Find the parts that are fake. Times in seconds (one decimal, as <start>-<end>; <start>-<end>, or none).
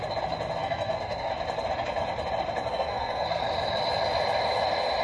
0.6-1.3; 2.7-3.4